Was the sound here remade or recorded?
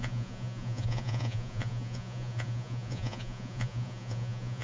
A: remade